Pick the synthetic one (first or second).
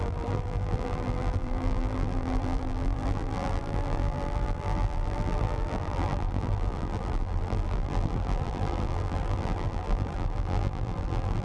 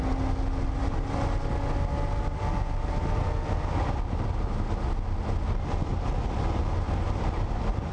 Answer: first